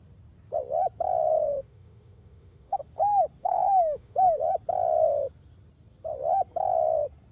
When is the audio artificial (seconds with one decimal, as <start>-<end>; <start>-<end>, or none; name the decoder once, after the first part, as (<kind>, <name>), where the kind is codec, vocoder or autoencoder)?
1.4-2.8 (autoencoder, DAC-VAE); 3.4-4.4